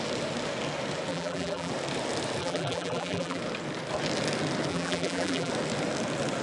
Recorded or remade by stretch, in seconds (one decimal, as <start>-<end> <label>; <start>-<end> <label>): 0.0-1.1 recorded; 1.1-1.7 remade; 1.7-2.4 recorded; 2.4-3.4 remade; 3.4-4.7 recorded; 4.7-5.5 remade; 5.5-6.4 recorded